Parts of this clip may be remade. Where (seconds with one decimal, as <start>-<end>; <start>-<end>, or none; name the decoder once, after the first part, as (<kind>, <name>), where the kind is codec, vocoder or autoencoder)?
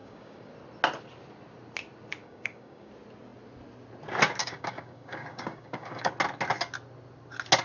0.0-0.5 (codec, DAC); 2.2-2.9; 4.4-6.1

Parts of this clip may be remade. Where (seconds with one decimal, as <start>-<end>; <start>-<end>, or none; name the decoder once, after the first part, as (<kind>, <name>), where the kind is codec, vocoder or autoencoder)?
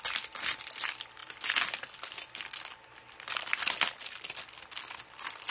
none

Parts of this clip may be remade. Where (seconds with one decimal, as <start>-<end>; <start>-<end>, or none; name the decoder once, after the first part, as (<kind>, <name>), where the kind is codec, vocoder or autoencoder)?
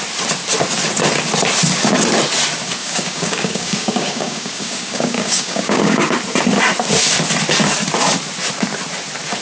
2.8-6.1 (codec, DAC)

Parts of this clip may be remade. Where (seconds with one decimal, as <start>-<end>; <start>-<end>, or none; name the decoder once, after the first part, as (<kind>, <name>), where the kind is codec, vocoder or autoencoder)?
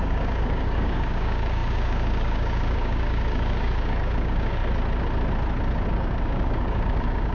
0.0-4.6 (codec, DAC); 5.9-7.3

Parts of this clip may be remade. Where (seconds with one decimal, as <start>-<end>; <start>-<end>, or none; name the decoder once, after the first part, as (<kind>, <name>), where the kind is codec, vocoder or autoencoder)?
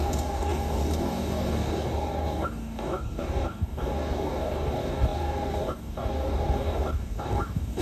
0.0-7.8 (codec, DAC)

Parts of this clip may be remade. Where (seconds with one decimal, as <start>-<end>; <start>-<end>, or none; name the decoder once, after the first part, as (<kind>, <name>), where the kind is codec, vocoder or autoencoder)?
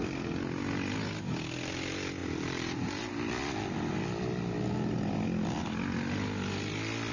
none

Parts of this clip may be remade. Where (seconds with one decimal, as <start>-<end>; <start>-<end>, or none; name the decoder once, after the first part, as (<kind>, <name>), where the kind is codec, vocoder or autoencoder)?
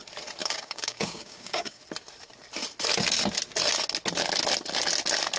0.4-1.8 (codec, DAC)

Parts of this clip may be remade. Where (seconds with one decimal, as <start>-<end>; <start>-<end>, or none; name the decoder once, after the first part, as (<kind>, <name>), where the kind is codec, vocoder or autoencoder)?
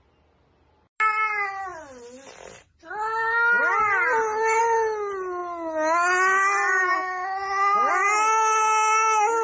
none